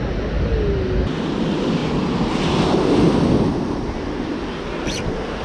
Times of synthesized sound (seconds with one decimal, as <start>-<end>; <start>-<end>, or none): none